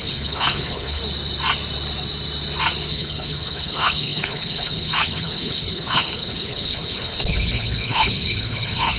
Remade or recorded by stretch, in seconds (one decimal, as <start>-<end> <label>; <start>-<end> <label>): 0.0-1.0 remade; 1.0-2.9 recorded; 2.9-9.0 remade